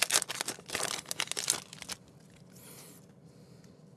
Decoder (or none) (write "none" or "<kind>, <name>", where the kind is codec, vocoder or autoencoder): none